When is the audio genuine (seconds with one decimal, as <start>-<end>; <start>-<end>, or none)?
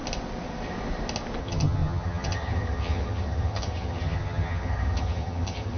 0.0-1.4